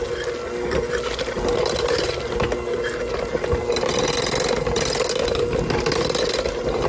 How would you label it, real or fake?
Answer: real